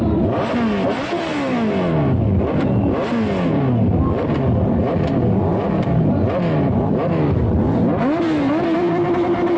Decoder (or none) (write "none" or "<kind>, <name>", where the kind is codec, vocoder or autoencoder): none